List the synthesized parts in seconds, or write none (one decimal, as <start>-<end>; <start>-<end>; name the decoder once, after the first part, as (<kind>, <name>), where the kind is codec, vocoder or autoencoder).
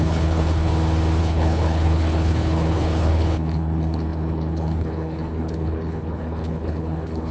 0.0-0.7 (codec, HILCodec); 1.2-7.3